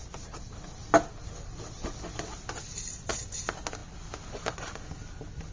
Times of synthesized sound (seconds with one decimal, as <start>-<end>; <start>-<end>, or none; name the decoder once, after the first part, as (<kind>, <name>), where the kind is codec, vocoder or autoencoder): none